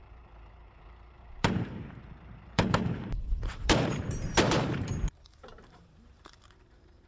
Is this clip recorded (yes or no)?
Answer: no